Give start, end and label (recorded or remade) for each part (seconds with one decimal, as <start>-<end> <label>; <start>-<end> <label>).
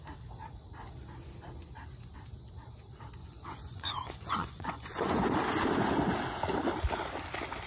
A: 0.0-3.2 recorded; 3.2-5.3 remade; 5.3-7.7 recorded